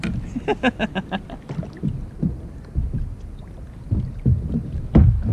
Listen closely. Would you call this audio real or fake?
real